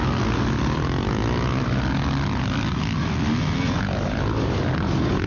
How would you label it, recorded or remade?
recorded